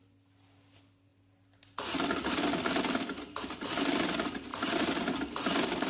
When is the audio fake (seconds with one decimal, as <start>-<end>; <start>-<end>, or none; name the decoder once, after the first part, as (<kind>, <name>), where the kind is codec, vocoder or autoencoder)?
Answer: 0.0-4.5 (vocoder, BigVGAN v2); 5.2-5.9